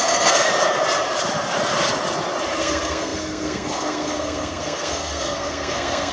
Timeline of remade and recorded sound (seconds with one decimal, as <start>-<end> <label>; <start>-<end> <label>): 0.0-0.5 remade; 0.5-2.6 recorded; 2.6-6.1 remade